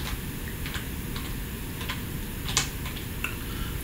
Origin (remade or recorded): recorded